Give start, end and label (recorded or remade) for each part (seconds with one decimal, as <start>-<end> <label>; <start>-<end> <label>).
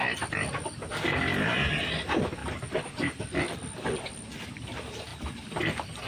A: 0.0-2.4 recorded; 2.4-3.2 remade; 3.2-5.1 recorded; 5.1-6.1 remade